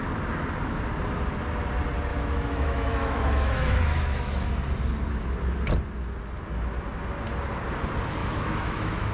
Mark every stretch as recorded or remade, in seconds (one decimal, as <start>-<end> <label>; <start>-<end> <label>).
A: 0.0-2.1 recorded; 2.1-4.5 remade; 4.5-8.2 recorded; 8.2-9.1 remade